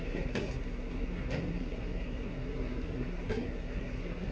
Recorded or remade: remade